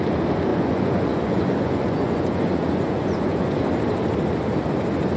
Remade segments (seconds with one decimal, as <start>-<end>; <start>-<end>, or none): 0.5-3.6